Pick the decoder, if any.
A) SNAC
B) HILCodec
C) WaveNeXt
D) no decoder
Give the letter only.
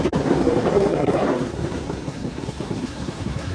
A